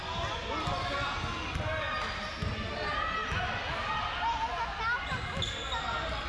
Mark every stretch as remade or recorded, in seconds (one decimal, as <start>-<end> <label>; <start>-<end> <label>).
0.0-6.3 recorded